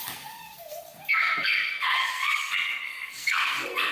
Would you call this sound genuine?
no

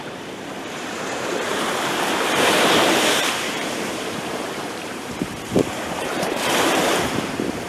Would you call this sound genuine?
no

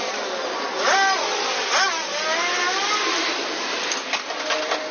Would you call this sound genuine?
yes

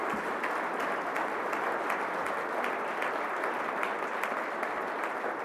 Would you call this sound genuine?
yes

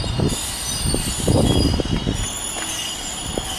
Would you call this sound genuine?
yes